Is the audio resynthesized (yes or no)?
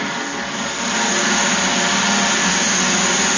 no